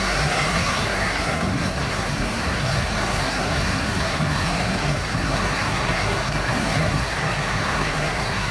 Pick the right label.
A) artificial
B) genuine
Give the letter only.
A